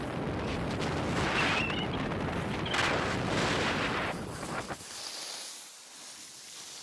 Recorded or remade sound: recorded